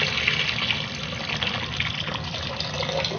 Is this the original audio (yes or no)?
yes